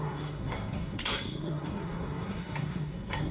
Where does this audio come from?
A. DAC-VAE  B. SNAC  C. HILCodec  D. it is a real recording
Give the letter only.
B